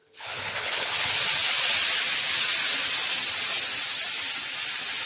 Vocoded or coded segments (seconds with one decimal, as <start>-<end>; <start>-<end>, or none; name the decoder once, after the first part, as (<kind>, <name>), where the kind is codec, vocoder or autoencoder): 0.0-1.1 (codec, HILCodec)